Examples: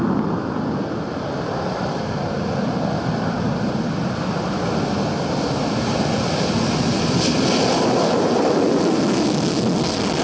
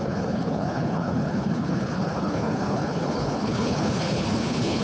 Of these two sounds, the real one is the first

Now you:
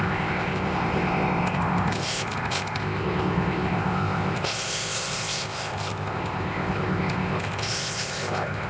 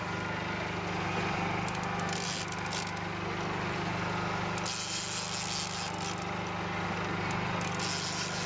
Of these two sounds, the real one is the second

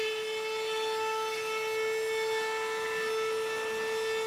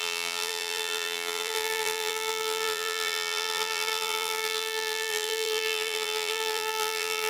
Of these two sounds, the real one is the first